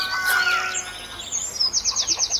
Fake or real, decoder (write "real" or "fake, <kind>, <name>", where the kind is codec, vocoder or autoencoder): real